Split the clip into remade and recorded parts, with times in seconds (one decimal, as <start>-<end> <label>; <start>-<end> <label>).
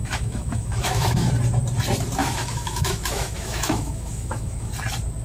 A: 0.0-1.3 remade; 1.3-2.2 recorded; 2.2-4.7 remade; 4.7-5.2 recorded